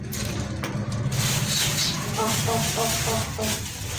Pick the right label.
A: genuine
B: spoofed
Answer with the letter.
B